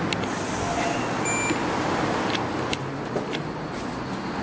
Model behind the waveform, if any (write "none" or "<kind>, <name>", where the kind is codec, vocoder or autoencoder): none